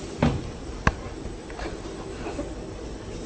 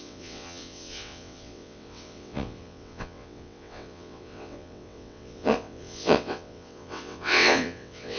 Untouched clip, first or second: first